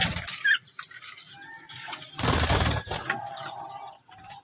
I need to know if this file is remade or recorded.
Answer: recorded